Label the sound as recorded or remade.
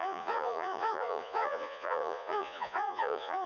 remade